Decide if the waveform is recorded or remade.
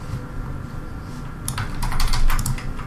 recorded